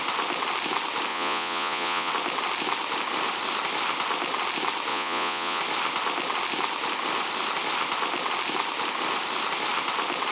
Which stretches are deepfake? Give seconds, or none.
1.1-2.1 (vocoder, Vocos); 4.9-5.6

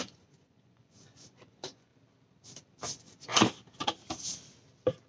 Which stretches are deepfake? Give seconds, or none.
0.0-1.9 (vocoder, Vocos); 2.9-3.3

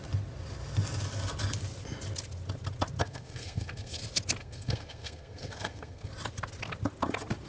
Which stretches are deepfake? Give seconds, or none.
3.0-4.0 (codec, SNAC); 4.4-6.1